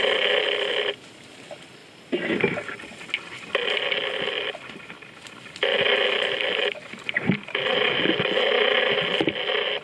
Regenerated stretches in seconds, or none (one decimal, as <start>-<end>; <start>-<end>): none